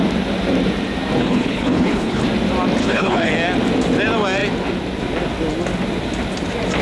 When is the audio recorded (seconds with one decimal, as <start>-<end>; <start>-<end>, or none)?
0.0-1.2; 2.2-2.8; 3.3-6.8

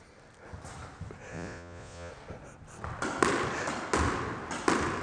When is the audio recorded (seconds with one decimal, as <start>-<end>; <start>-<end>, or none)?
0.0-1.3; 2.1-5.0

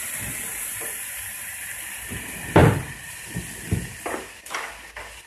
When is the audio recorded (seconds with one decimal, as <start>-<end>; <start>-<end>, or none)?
0.0-2.6; 3.2-5.3

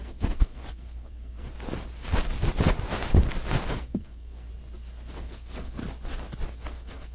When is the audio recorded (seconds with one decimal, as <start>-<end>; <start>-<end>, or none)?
1.5-3.7; 4.5-5.1; 5.8-6.5

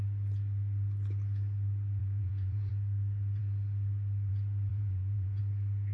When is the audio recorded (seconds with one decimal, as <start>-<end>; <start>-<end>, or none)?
0.0-2.0; 2.7-4.7; 5.4-5.9

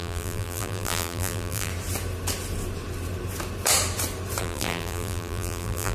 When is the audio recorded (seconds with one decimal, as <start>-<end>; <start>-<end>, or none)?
1.7-4.4